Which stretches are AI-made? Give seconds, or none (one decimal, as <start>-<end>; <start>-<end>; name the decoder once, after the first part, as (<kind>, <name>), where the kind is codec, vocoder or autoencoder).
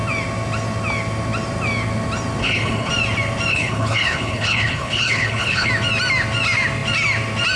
2.4-2.9 (codec, HILCodec); 3.5-5.7